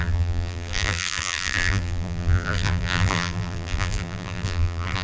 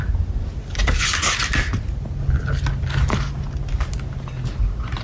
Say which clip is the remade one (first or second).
first